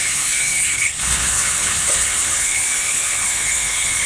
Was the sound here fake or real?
fake